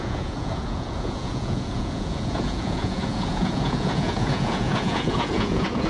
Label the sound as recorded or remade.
remade